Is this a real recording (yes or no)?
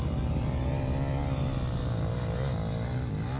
yes